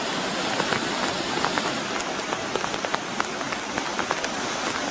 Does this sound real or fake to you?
fake